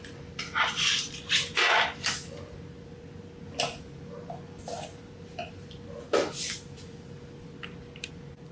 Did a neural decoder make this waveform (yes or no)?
no